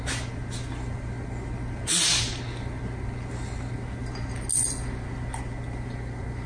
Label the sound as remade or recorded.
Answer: recorded